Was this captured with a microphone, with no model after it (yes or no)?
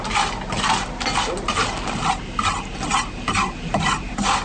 yes